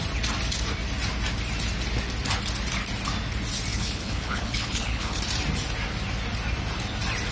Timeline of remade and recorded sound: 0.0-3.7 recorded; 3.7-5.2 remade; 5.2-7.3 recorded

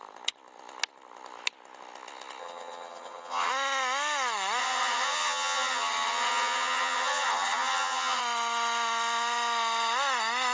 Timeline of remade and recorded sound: 0.0-2.4 recorded; 2.4-3.5 remade; 3.5-4.6 recorded; 4.6-8.2 remade; 8.2-10.5 recorded

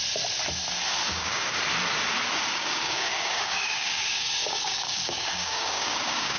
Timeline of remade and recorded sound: 0.0-1.1 recorded; 1.1-1.6 remade; 1.6-2.5 recorded; 2.5-6.4 remade

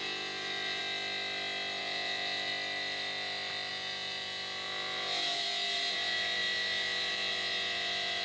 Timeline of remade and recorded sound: 0.0-0.8 remade; 0.8-1.8 recorded; 1.8-2.5 remade; 2.5-3.7 recorded; 3.7-8.2 remade

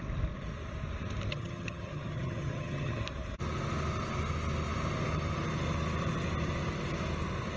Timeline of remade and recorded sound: 0.0-1.3 recorded; 1.3-3.0 remade; 3.0-7.6 recorded

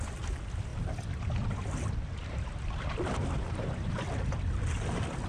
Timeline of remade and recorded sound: 0.0-5.3 recorded